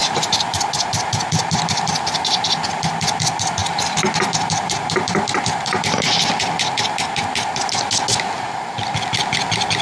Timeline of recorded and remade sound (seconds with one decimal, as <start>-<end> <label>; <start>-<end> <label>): 0.0-0.7 remade; 0.7-3.6 recorded; 3.6-6.1 remade; 6.1-9.8 recorded